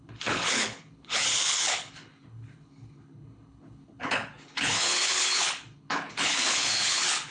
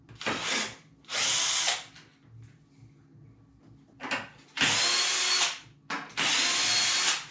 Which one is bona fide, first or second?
second